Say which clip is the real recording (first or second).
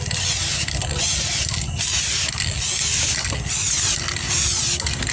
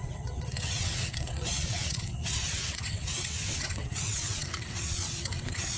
first